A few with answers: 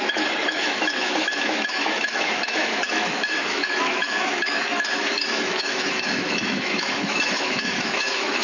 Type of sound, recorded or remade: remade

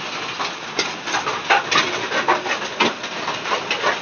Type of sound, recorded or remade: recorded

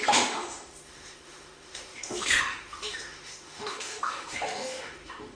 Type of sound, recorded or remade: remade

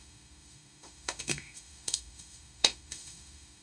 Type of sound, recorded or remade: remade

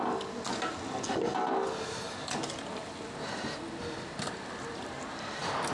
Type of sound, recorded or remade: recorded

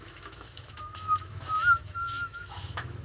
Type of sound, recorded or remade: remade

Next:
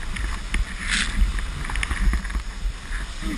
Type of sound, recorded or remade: recorded